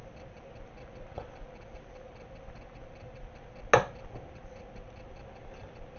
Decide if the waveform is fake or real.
real